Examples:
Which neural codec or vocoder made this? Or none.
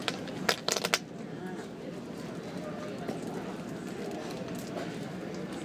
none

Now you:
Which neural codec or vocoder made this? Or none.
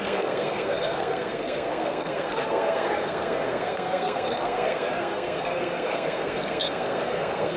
codec, SNAC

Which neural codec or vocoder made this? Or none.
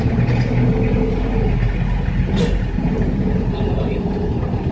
none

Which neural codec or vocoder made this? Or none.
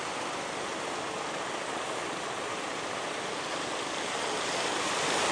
none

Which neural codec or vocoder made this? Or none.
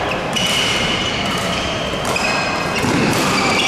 none